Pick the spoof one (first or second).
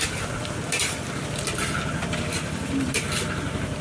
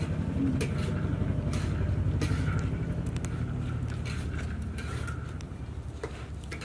first